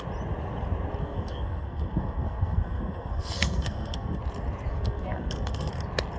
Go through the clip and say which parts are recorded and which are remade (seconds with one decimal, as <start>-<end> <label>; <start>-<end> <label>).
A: 0.0-1.0 recorded; 1.0-4.2 remade; 4.2-4.7 recorded; 4.7-5.7 remade; 5.7-6.2 recorded